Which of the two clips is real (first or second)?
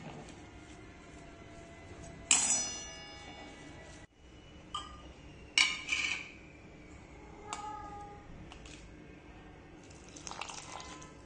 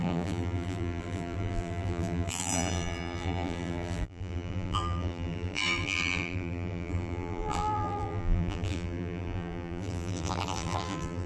first